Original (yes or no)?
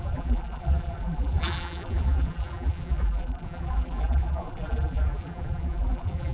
no